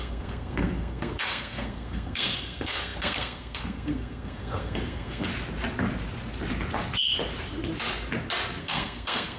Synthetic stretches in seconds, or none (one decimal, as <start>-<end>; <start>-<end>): 0.0-5.3; 8.6-9.4